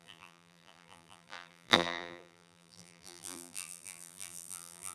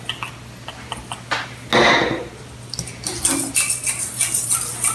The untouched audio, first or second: second